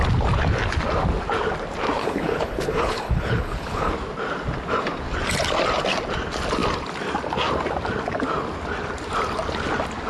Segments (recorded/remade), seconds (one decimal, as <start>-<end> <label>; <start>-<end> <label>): 0.0-2.0 recorded; 2.0-3.9 remade; 3.9-10.1 recorded